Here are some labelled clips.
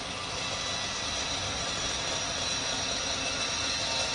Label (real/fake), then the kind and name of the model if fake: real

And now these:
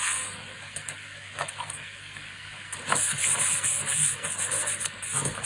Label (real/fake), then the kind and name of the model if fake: fake, codec, SNAC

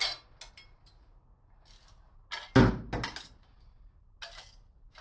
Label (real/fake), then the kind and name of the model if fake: real